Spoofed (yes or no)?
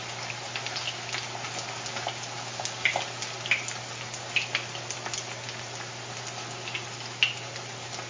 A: no